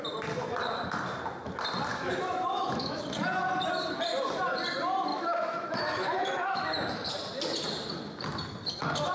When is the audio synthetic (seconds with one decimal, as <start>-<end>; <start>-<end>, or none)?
1.9-3.0; 5.1-7.1